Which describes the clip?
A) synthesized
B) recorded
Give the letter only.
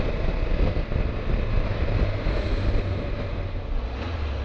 B